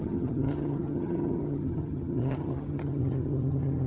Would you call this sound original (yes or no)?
no